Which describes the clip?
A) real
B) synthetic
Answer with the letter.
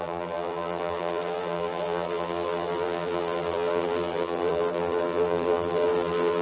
B